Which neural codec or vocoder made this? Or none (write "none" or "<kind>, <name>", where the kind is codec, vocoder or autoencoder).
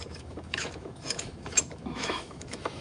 autoencoder, DAC-VAE